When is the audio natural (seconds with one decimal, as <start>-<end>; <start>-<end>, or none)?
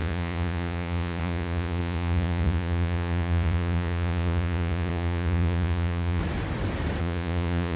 6.2-7.0